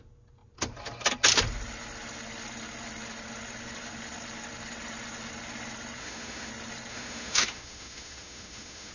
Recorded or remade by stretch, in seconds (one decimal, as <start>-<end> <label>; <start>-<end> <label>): 0.0-6.0 recorded; 6.0-6.5 remade; 6.5-6.9 recorded; 6.9-8.9 remade